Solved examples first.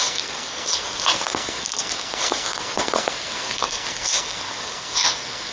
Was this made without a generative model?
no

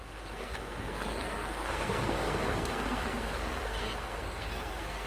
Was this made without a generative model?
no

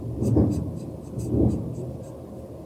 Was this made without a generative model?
yes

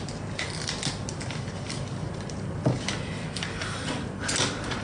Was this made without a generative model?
yes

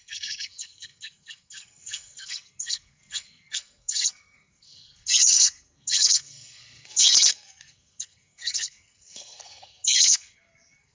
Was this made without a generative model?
no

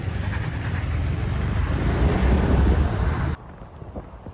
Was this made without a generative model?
yes